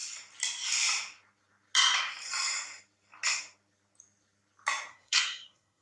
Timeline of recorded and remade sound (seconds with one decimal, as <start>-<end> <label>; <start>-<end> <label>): 0.0-4.9 recorded; 4.9-5.8 remade